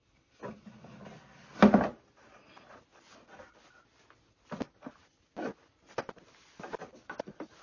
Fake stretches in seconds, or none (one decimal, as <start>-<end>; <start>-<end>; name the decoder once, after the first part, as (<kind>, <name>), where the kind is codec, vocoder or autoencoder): none